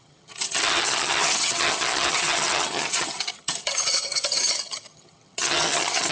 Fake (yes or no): yes